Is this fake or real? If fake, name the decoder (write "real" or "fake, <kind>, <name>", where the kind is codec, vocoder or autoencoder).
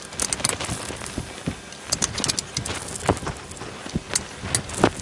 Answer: real